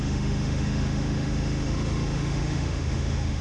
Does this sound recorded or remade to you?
remade